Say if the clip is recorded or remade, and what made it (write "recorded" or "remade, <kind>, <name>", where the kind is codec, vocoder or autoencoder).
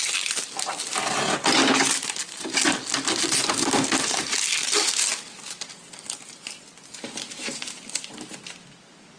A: recorded